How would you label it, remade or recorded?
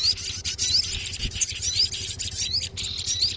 recorded